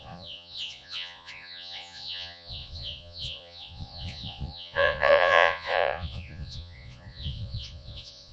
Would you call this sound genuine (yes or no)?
no